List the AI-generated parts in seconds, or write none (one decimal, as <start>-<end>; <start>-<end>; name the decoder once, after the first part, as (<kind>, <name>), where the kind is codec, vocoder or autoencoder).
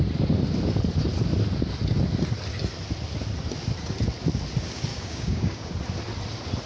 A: 4.9-5.7 (codec, DAC)